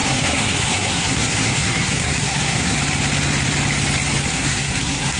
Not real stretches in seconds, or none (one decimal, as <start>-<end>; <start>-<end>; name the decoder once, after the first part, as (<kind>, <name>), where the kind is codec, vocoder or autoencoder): 0.0-2.8 (codec, SNAC); 4.3-5.2